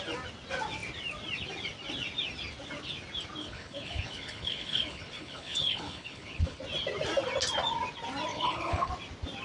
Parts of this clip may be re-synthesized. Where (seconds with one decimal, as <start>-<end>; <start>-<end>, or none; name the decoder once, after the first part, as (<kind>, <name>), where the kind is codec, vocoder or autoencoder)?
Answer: 3.4-6.6 (codec, HILCodec); 8.3-8.9